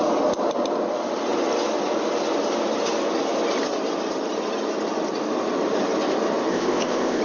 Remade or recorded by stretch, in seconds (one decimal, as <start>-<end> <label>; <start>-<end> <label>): 0.0-6.5 recorded; 6.5-7.2 remade